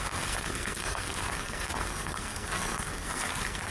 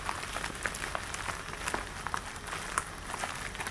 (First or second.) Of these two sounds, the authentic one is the second